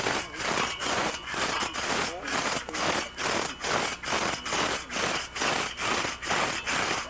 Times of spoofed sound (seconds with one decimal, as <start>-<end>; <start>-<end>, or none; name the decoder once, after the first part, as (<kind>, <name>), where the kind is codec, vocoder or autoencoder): 0.8-1.4 (vocoder, Vocos)